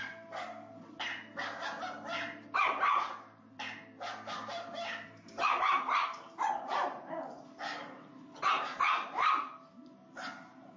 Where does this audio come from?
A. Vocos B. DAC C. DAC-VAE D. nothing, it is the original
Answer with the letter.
D